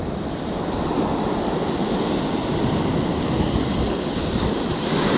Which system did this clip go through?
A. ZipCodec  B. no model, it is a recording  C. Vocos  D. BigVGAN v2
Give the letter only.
B